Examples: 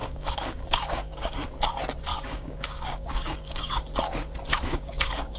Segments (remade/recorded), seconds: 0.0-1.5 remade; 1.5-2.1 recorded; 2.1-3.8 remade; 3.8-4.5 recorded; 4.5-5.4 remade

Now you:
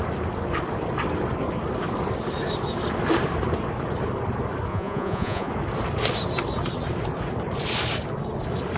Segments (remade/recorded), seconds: 0.0-4.7 recorded; 4.7-5.5 remade; 5.5-8.8 recorded

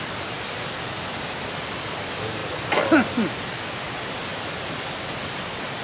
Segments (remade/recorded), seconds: 0.0-5.8 recorded

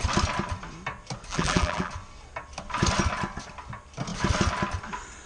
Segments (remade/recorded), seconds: 0.0-1.3 recorded; 1.3-1.9 remade; 1.9-5.3 recorded

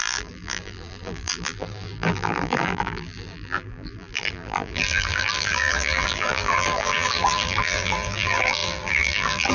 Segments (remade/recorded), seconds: 0.0-9.5 remade

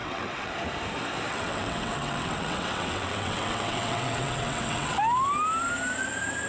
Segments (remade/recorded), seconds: 0.0-0.5 remade; 0.5-1.3 recorded; 1.3-5.0 remade; 5.0-6.5 recorded

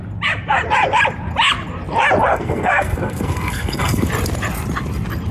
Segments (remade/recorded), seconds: 0.0-2.3 recorded; 2.3-4.1 remade; 4.1-5.3 recorded